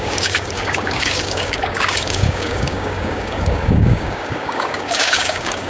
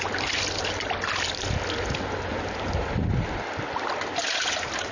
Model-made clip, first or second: first